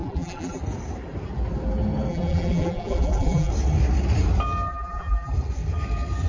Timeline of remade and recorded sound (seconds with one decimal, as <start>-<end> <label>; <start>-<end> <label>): 0.0-0.6 remade; 0.6-2.1 recorded; 2.1-3.5 remade; 3.5-4.7 recorded; 4.7-5.3 remade; 5.3-6.3 recorded